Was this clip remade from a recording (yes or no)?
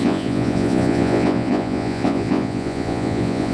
yes